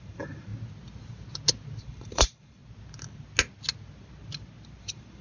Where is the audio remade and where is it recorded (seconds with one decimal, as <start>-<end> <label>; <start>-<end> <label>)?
0.0-0.5 remade; 0.5-1.8 recorded; 1.8-2.6 remade; 2.6-4.8 recorded; 4.8-5.2 remade